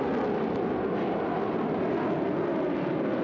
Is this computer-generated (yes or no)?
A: no